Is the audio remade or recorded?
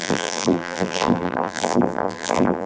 remade